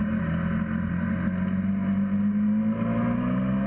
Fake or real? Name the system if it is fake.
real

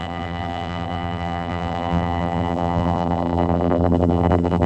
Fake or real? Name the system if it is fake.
fake, vocoder, BigVGAN v2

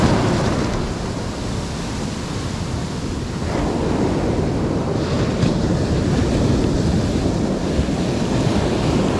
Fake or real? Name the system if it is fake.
real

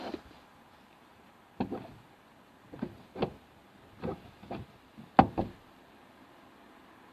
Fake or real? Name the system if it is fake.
real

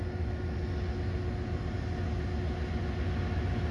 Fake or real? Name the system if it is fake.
real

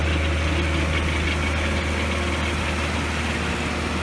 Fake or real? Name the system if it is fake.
real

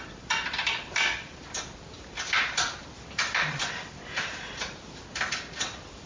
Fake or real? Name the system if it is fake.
fake, vocoder, BigVGAN v2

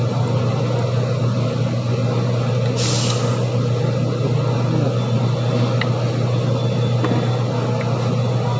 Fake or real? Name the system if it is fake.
real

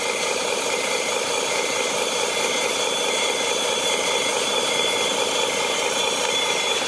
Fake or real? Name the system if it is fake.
fake, vocoder, BigVGAN v2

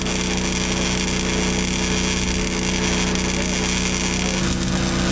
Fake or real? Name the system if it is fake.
real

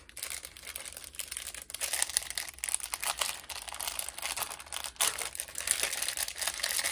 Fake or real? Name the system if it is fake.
real